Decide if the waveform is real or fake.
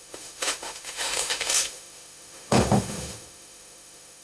fake